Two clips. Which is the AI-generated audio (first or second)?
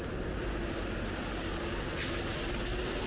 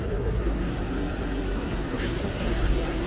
second